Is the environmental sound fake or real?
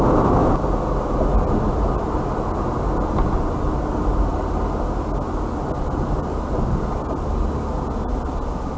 real